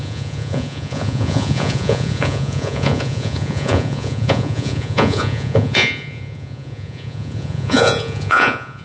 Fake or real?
fake